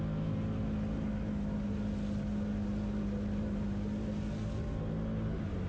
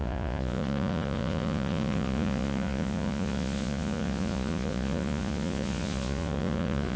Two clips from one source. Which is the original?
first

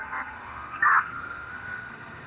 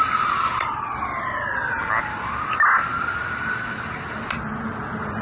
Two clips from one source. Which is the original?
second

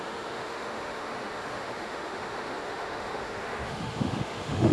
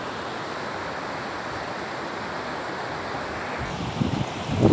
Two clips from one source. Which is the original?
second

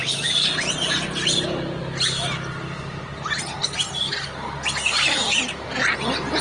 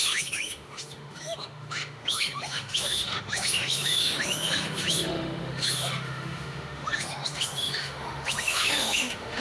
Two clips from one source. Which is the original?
first